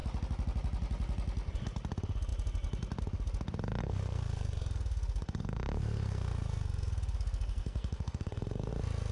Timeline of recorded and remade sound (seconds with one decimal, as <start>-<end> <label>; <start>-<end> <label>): 0.0-3.8 recorded; 3.8-8.7 remade; 8.7-9.1 recorded